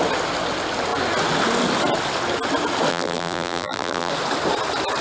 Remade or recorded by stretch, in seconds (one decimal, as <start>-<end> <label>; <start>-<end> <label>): 0.0-2.9 recorded; 2.9-4.1 remade; 4.1-5.0 recorded